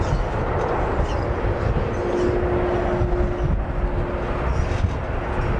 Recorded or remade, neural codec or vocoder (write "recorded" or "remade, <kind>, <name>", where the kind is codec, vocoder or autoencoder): recorded